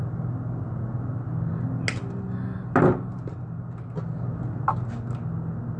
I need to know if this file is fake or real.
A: real